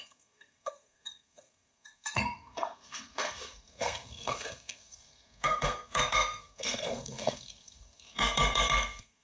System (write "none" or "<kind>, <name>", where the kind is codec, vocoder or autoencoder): codec, SNAC